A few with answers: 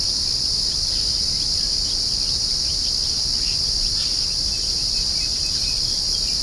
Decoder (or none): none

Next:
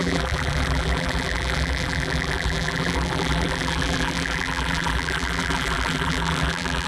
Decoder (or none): vocoder, BigVGAN v2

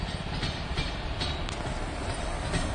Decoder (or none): none